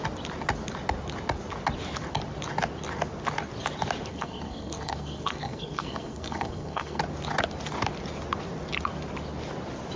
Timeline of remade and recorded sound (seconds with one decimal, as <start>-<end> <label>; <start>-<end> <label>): 0.0-4.1 recorded; 4.1-7.0 remade; 7.0-10.0 recorded